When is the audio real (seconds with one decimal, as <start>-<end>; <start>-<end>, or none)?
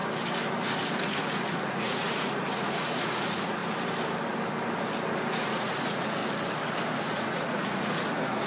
0.0-0.9; 3.6-5.3; 6.2-6.9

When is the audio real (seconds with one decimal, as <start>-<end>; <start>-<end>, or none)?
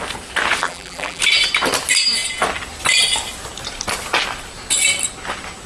0.0-0.6; 1.2-5.7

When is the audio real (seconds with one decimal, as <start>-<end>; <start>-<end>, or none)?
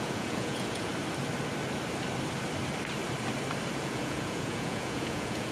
0.9-3.8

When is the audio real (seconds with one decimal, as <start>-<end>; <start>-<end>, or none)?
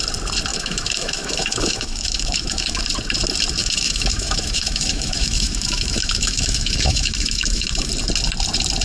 0.0-0.5; 2.8-3.6; 7.9-8.8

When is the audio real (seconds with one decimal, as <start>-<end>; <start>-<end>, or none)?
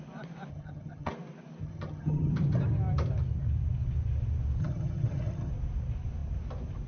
0.0-0.5; 1.1-1.6; 2.3-4.6; 5.5-6.9